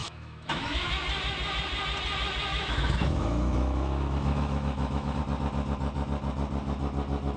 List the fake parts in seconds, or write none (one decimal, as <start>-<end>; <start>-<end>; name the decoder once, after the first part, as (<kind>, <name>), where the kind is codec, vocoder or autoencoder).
0.0-0.9 (autoencoder, DAC-VAE); 2.5-5.2